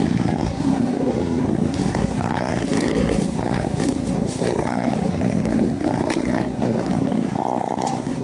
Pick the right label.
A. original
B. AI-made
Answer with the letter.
B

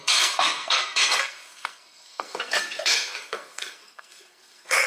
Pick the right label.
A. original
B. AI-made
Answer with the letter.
B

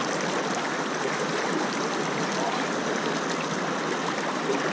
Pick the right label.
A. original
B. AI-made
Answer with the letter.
A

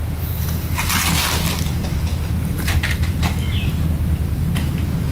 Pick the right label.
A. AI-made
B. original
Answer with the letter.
B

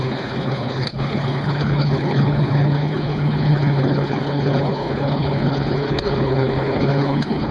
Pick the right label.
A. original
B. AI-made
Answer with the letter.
B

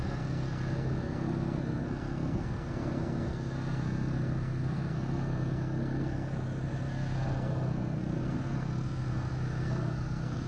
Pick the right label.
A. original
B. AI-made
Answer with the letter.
B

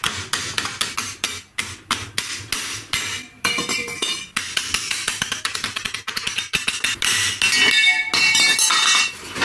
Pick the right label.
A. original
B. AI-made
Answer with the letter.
A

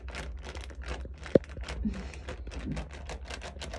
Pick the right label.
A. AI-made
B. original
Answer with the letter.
B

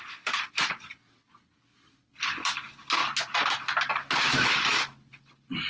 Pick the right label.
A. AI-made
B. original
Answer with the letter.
B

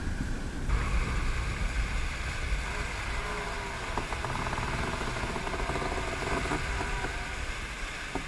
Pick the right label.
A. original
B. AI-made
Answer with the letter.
A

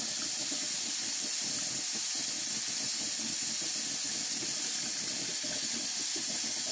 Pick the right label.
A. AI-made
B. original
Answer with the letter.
B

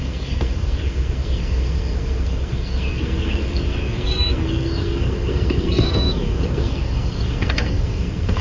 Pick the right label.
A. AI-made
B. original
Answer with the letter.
A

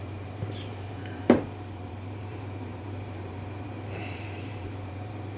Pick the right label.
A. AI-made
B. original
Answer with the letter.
A